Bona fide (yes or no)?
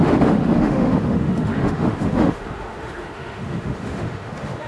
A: no